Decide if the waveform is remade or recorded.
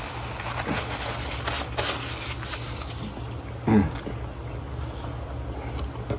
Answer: recorded